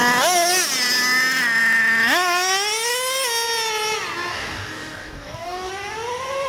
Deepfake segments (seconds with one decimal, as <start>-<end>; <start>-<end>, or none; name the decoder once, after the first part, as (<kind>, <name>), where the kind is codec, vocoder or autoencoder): 4.3-5.7 (codec, DAC)